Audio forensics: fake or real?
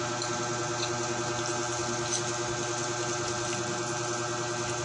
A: real